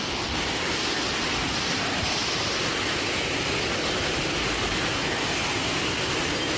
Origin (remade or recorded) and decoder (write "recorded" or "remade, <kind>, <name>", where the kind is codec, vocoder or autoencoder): recorded